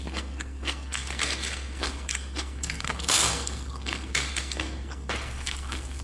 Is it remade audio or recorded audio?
remade